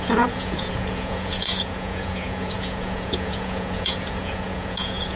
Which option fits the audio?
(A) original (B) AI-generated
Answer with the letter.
B